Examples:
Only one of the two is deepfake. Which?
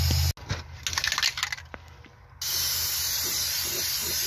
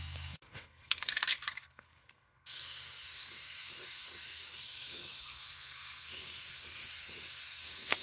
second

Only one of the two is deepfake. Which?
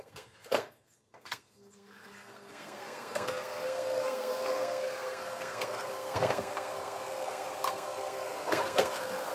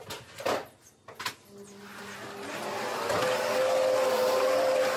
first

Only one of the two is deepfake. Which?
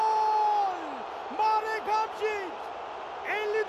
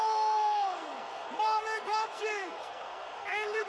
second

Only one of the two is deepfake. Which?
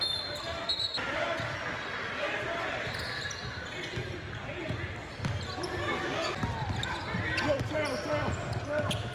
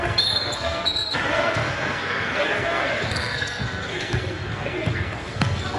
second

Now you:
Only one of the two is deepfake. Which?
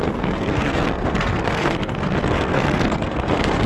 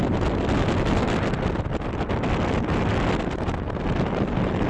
first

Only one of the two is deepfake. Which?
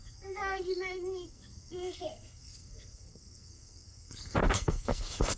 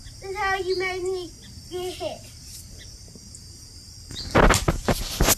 first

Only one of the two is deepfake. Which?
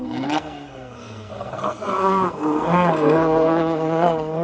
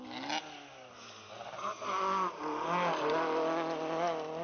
first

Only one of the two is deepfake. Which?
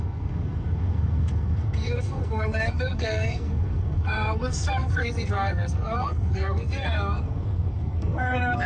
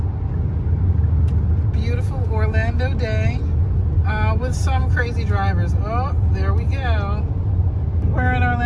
first